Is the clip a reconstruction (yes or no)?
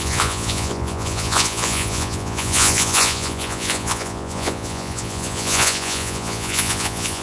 yes